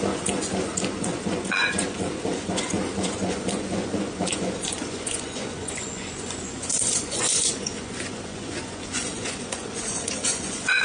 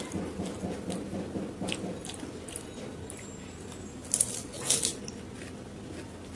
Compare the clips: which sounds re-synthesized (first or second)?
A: first